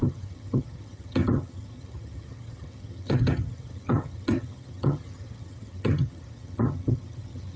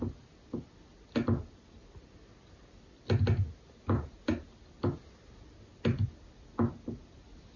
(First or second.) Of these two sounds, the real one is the second